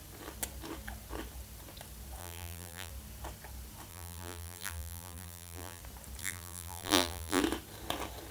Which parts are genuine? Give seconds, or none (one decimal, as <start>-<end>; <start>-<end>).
0.0-2.2; 2.9-3.9; 5.8-6.2; 7.4-8.3